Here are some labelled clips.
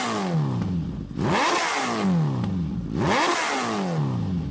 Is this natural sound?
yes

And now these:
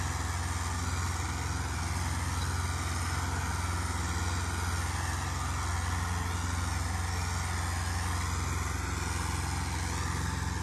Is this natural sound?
yes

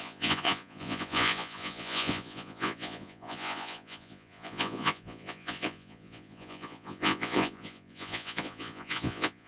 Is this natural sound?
no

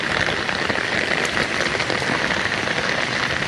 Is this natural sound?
yes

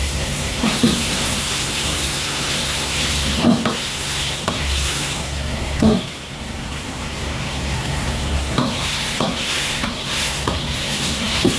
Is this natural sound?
no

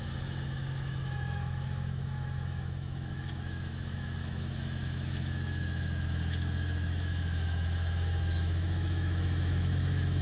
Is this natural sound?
no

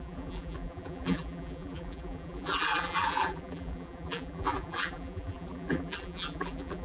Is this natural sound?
no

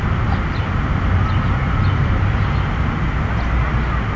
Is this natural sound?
yes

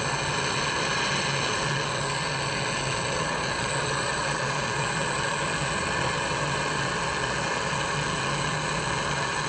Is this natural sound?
yes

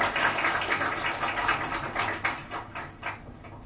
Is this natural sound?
yes